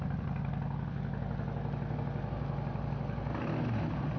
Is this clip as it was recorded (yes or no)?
yes